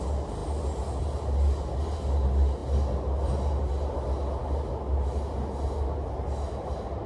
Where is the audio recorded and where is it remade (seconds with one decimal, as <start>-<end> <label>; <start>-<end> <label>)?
0.0-7.1 recorded